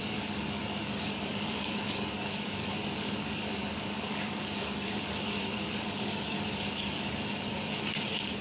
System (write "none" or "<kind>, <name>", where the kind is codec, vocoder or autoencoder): codec, DAC